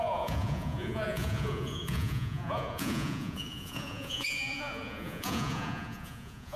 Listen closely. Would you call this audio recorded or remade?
remade